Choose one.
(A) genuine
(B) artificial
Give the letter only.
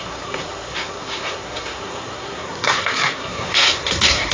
B